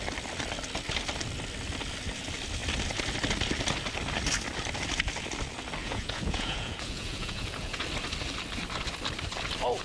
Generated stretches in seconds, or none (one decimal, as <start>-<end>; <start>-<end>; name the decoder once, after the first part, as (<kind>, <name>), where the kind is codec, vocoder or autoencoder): 5.8-7.8 (vocoder, Vocos)